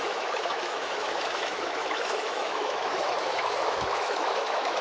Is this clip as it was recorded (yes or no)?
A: no